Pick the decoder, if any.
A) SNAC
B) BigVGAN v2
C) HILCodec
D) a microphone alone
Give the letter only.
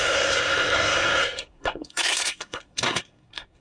A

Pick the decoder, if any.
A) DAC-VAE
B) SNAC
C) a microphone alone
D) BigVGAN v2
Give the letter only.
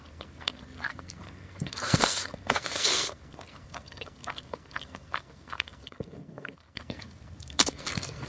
B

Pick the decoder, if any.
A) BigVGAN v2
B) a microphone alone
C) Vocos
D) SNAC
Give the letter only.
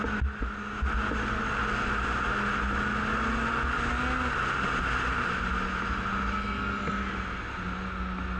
B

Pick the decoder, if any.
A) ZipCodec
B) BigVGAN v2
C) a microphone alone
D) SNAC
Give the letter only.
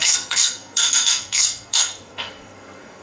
D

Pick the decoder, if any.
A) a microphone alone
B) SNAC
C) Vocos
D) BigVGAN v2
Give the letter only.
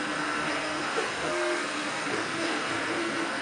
B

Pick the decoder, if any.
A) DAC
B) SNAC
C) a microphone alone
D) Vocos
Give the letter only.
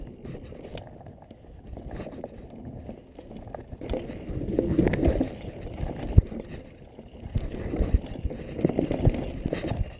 C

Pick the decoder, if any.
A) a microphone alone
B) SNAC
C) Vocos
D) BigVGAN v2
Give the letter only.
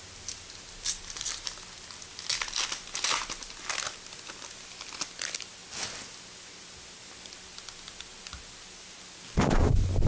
A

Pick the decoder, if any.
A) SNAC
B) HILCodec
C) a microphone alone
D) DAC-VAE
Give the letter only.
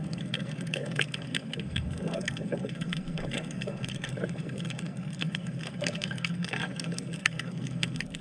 A